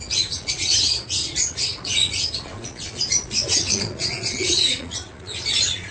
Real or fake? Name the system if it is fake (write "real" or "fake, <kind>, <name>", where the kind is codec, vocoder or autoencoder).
fake, vocoder, Vocos